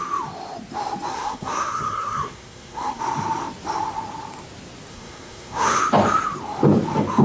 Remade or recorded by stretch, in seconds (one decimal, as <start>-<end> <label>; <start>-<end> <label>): 0.0-1.1 recorded; 1.1-3.0 remade; 3.0-4.9 recorded; 4.9-5.8 remade; 5.8-7.2 recorded